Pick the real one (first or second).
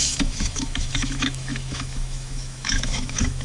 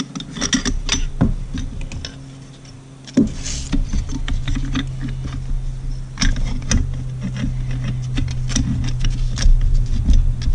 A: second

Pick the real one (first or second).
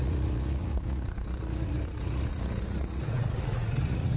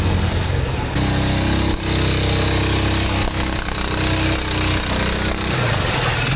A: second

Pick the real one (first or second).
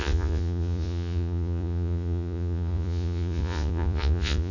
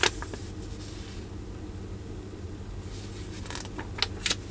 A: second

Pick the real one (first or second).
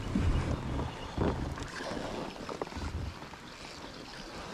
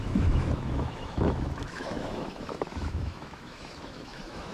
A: first